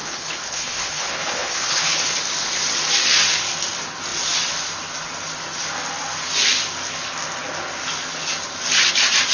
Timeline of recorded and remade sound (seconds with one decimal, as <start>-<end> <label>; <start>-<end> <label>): 0.0-2.2 remade; 2.2-9.3 recorded